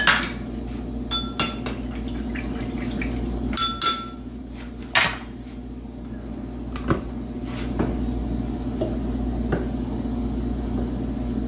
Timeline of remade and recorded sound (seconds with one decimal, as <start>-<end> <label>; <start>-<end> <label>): 0.0-11.5 recorded